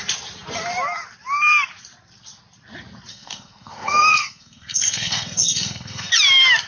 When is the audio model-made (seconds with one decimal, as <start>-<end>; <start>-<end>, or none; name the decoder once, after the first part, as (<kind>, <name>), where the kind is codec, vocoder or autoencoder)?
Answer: 3.1-6.1 (codec, SNAC)